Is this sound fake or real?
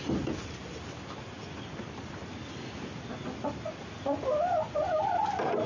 real